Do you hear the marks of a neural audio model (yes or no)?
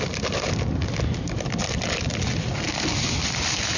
no